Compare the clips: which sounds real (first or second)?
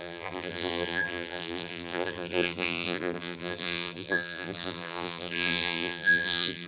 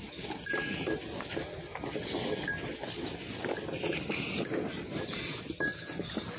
second